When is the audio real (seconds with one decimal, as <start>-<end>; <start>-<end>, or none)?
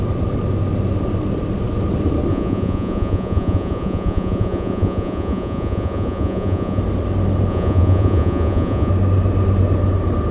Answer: 0.0-2.3; 6.8-7.5; 8.9-10.3